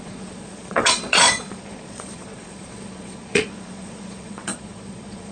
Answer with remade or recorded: remade